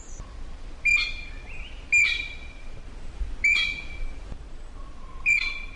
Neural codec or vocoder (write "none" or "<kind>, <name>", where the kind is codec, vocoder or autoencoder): none